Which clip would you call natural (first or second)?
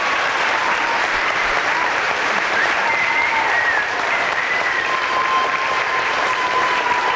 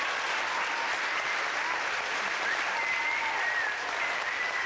second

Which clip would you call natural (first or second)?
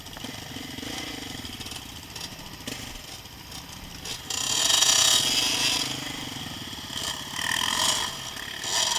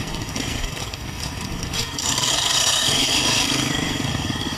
first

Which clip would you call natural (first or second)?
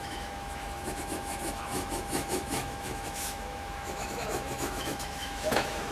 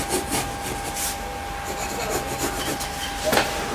second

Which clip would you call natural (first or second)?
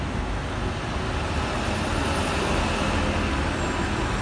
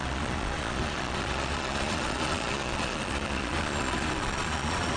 first